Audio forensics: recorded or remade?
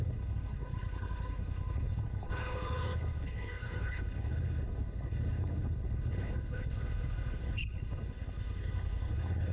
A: remade